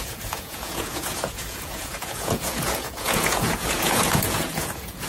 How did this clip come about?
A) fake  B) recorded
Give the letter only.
A